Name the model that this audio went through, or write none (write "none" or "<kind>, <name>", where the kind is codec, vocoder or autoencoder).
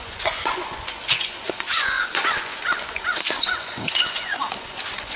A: vocoder, Vocos